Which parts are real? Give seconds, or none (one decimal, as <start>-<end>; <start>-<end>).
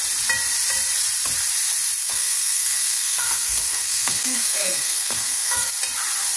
0.0-2.0; 5.7-6.4